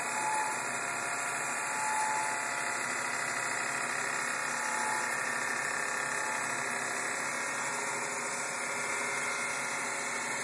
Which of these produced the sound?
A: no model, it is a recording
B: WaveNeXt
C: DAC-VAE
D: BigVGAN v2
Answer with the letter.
A